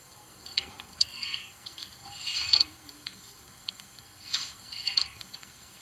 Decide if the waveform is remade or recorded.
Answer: remade